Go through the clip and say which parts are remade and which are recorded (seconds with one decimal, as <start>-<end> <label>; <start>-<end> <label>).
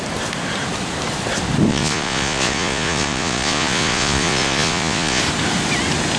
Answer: 0.0-1.7 recorded; 1.7-5.2 remade; 5.2-6.2 recorded